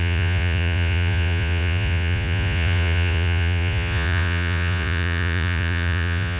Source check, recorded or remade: remade